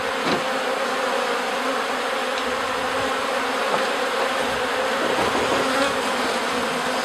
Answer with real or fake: real